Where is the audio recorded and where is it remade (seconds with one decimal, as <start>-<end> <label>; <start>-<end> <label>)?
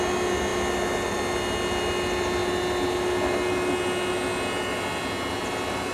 0.0-5.9 recorded